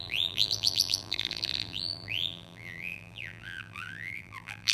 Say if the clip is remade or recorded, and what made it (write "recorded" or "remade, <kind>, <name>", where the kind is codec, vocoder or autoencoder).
remade, vocoder, BigVGAN v2